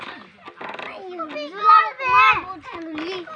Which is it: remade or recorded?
recorded